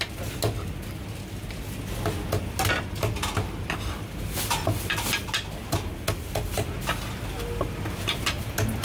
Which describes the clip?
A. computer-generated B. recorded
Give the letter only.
B